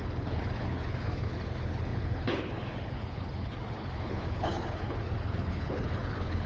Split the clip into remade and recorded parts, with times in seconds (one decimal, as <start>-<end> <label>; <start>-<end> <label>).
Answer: 0.0-6.5 remade